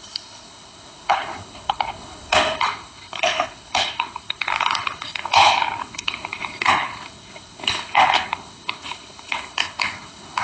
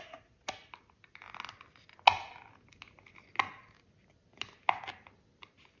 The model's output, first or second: first